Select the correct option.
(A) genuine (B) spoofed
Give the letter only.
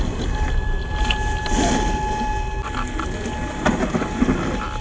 A